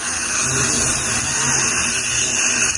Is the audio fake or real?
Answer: real